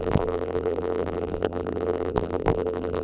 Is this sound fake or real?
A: fake